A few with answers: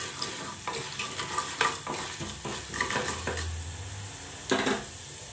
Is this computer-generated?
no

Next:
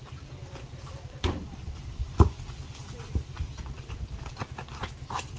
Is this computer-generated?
no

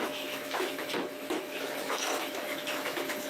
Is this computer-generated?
yes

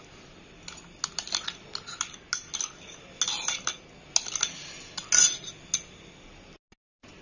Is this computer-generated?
no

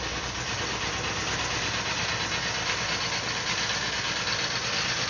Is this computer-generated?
no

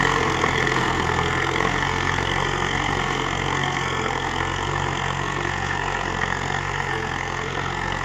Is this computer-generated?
yes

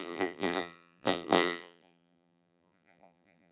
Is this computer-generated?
yes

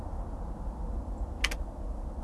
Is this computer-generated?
no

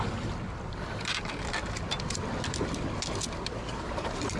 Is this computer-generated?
no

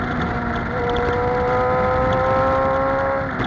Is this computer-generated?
no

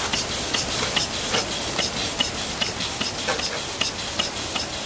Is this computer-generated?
no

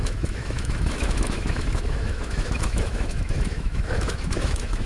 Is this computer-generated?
yes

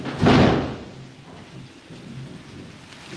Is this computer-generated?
no